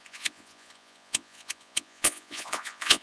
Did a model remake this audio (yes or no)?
yes